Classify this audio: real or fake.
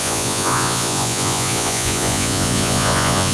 fake